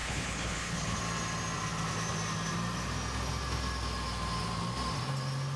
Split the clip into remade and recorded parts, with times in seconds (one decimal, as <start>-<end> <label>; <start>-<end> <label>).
0.0-1.0 remade; 1.0-5.6 recorded